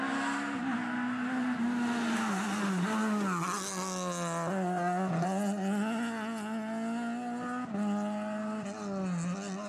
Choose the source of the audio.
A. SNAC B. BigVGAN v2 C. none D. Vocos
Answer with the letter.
C